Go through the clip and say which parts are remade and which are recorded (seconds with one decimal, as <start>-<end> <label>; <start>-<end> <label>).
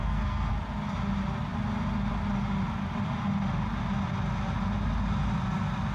0.0-0.5 remade; 0.5-5.9 recorded